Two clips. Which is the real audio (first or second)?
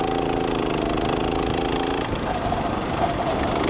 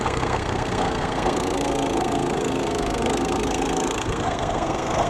first